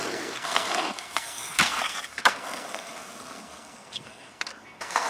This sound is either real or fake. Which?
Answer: fake